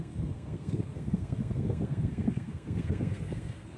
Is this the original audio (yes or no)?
no